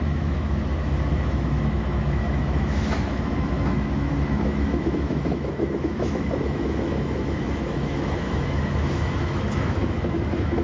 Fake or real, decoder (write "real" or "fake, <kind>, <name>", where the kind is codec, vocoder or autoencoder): fake, autoencoder, DAC-VAE